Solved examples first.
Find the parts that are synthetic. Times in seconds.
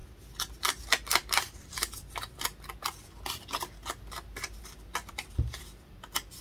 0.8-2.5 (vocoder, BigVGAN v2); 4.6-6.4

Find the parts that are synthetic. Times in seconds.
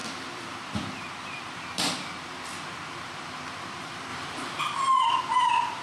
0.0-5.8 (vocoder, BigVGAN v2)